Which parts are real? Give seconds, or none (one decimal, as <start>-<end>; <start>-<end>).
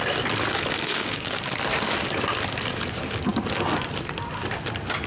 0.0-0.9; 1.4-5.1